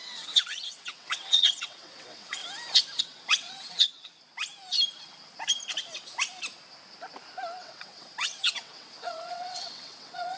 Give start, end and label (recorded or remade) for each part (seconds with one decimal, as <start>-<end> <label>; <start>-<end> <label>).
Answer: 0.0-2.4 remade; 2.4-3.0 recorded; 3.0-4.1 remade; 4.1-7.6 recorded; 7.6-10.4 remade